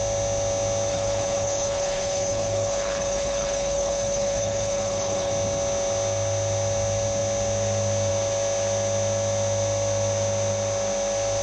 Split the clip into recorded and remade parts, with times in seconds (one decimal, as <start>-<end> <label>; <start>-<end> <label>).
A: 0.0-0.9 recorded; 0.9-5.3 remade; 5.3-11.4 recorded